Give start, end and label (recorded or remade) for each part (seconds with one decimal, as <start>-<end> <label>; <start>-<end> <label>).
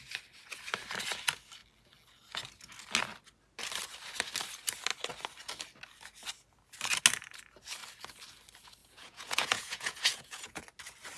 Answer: 0.0-8.8 recorded; 8.8-10.6 remade; 10.6-11.2 recorded